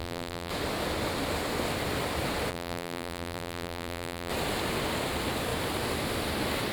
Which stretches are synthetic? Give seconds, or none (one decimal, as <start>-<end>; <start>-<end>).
0.0-0.5; 2.5-4.3